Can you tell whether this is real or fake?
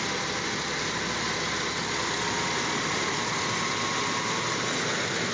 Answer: real